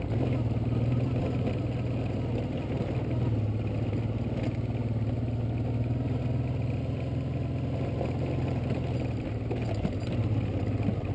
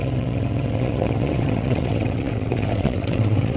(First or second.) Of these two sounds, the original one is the first